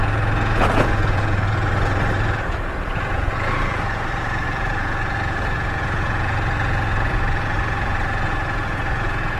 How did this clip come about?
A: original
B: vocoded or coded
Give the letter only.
B